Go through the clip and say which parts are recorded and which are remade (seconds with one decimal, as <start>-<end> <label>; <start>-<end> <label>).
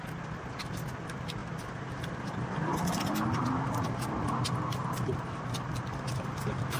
0.0-6.8 recorded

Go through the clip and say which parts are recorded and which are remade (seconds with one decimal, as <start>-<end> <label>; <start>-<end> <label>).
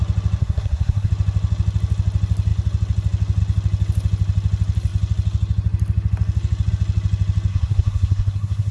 0.0-0.4 recorded; 0.4-1.1 remade; 1.1-7.5 recorded; 7.5-8.7 remade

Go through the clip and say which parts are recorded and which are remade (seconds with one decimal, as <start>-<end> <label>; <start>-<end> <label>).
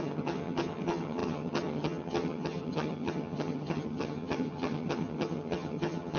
0.0-6.2 remade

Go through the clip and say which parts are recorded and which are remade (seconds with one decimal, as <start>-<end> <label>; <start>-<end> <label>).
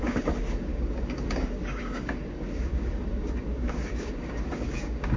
0.0-5.2 remade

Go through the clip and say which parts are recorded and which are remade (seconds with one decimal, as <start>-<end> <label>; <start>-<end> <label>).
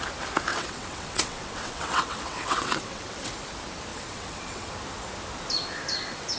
0.0-0.5 recorded; 0.5-3.3 remade; 3.3-3.9 recorded; 3.9-4.7 remade; 4.7-6.4 recorded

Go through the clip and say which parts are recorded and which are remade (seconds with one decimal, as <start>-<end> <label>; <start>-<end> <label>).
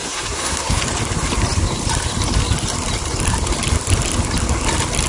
0.0-0.8 remade; 0.8-5.1 recorded